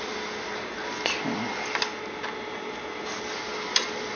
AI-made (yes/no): no